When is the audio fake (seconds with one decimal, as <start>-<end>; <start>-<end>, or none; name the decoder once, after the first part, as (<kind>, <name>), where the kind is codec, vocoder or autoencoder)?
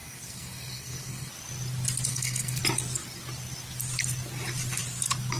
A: 0.0-1.3 (codec, SNAC); 2.1-2.6